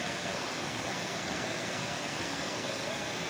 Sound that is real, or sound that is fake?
fake